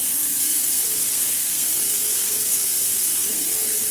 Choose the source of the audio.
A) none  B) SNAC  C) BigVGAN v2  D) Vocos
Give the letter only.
B